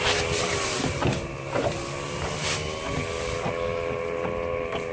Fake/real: real